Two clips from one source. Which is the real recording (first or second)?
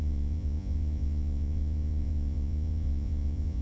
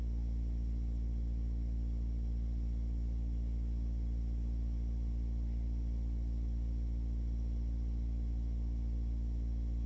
second